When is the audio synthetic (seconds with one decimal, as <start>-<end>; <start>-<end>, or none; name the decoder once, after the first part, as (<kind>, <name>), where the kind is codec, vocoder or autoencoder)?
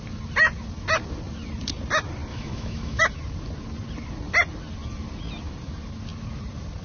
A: 2.3-3.0 (autoencoder, DAC-VAE)